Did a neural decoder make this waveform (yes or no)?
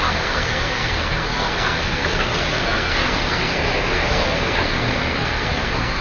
yes